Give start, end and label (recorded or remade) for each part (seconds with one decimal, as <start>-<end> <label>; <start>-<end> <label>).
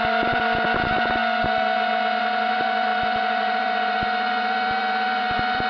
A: 0.0-1.2 remade; 1.2-2.5 recorded; 2.5-5.7 remade